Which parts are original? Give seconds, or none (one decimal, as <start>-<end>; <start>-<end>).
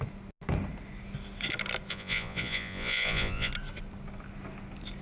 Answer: 0.0-1.9; 3.5-5.0